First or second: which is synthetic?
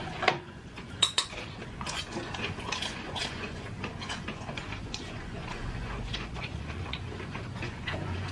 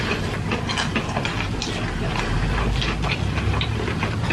first